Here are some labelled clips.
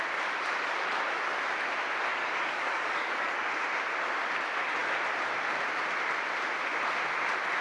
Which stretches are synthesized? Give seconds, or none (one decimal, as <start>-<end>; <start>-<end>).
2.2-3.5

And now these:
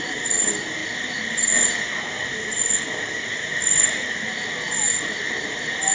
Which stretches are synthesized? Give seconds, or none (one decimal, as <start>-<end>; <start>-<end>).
none

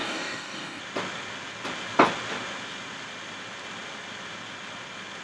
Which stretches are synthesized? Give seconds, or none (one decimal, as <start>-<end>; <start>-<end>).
0.0-0.8

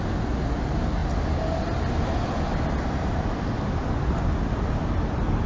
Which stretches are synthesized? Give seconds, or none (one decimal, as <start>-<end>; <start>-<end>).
none

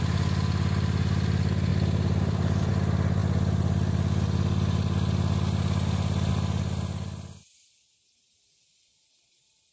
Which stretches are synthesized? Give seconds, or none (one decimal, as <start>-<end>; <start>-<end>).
1.7-2.7

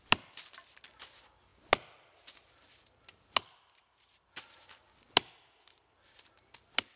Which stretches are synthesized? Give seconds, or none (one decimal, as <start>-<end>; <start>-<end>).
none